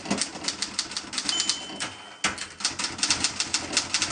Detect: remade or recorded recorded